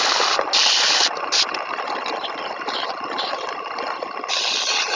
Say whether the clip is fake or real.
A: real